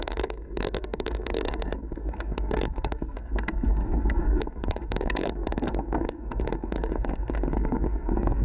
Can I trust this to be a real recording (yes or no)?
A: no